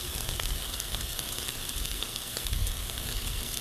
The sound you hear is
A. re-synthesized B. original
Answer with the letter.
A